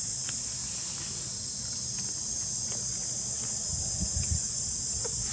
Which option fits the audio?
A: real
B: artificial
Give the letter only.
A